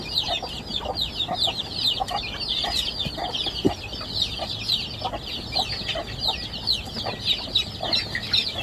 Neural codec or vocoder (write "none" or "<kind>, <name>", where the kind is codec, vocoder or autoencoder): none